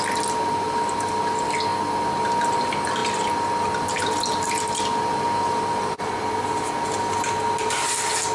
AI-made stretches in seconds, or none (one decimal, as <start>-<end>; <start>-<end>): none